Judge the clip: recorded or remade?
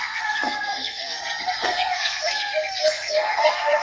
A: remade